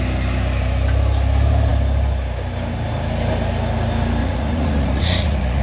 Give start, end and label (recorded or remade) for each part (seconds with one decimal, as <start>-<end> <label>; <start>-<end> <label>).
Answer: 0.0-4.2 recorded; 4.2-5.6 remade